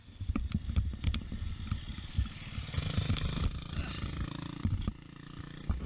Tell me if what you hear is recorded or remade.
recorded